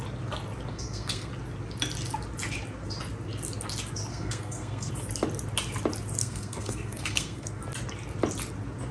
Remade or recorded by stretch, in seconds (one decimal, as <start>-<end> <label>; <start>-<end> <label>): 0.0-0.7 recorded; 0.7-1.3 remade; 1.3-4.1 recorded; 4.1-4.9 remade; 4.9-6.2 recorded; 6.2-7.6 remade; 7.6-8.9 recorded